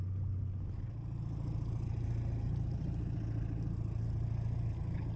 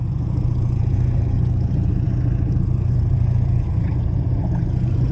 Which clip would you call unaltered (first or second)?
first